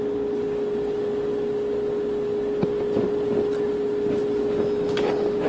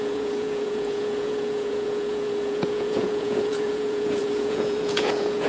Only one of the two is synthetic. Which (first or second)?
second